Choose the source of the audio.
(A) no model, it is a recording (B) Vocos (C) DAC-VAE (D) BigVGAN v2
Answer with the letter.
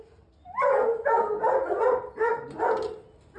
A